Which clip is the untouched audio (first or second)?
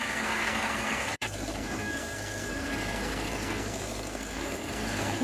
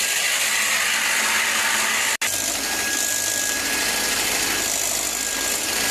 second